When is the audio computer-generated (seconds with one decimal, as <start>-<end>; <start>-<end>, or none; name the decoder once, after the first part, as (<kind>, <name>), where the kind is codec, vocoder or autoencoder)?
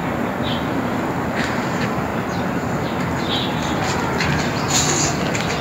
none